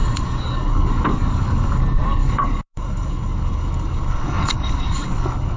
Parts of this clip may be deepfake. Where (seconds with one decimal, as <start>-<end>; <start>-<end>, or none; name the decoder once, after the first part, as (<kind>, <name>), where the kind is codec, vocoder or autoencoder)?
0.0-1.8 (codec, DAC); 2.2-5.6